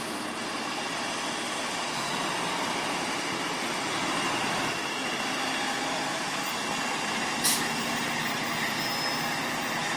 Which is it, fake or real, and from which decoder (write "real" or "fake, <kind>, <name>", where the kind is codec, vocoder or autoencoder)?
real